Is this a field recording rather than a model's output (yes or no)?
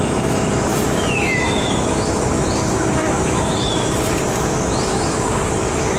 no